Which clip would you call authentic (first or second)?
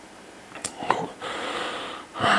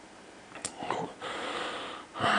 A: second